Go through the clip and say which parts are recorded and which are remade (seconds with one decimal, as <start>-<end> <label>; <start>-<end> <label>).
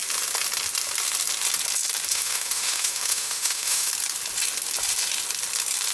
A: 0.0-2.1 recorded; 2.1-3.9 remade; 3.9-5.9 recorded